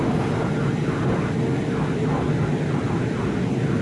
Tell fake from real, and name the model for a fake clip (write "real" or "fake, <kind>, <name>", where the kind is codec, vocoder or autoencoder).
real